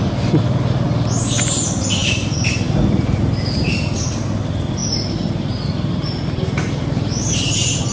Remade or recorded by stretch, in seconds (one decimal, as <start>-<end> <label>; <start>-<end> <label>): 0.0-7.9 recorded